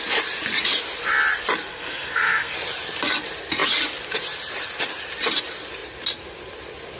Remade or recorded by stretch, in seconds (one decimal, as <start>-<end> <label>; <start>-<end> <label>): 0.0-1.7 recorded; 1.7-2.5 remade; 2.5-7.0 recorded

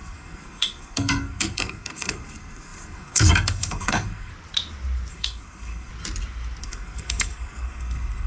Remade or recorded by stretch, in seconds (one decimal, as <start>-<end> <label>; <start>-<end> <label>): 0.0-4.3 remade; 4.3-5.1 recorded; 5.1-5.9 remade; 5.9-6.6 recorded; 6.6-8.3 remade

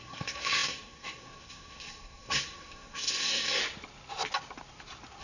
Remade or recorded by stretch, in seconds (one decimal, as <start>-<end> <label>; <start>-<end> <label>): 0.0-3.6 remade; 3.6-5.2 recorded

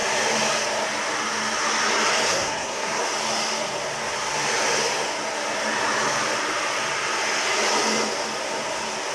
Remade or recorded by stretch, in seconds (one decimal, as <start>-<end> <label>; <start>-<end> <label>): 0.0-2.3 recorded; 2.3-3.0 remade; 3.0-9.1 recorded

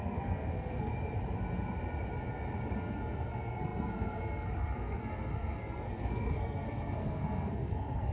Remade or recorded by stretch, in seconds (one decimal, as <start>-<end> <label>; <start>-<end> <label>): 0.0-0.9 remade; 0.9-2.7 recorded; 2.7-8.1 remade

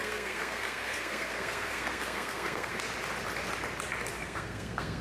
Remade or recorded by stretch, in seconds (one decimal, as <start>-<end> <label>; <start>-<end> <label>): 0.0-2.7 remade; 2.7-4.2 recorded; 4.2-5.0 remade

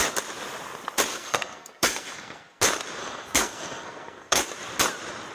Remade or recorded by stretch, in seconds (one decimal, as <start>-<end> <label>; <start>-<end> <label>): 0.0-1.1 recorded; 1.1-2.6 remade; 2.6-3.0 recorded; 3.0-4.4 remade; 4.4-5.3 recorded